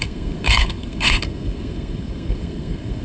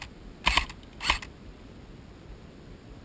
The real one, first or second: second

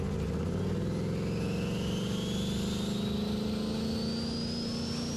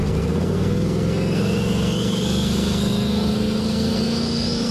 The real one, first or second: first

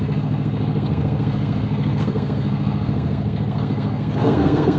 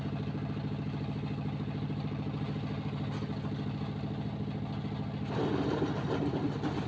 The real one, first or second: second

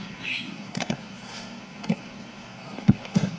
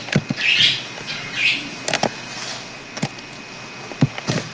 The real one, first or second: second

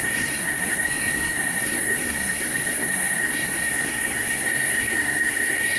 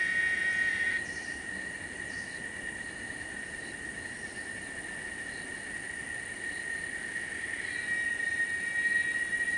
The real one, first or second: second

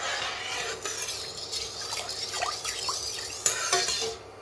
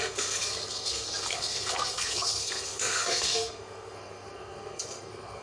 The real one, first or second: first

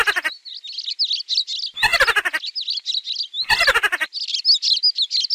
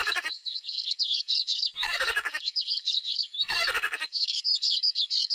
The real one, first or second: first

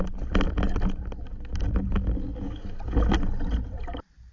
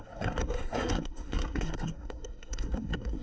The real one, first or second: first